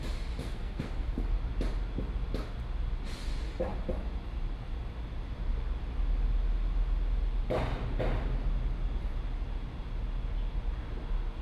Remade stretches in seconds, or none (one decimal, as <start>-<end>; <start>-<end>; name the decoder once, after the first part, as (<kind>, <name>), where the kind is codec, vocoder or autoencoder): 0.4-1.4 (codec, SNAC)